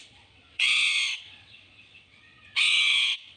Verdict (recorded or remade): remade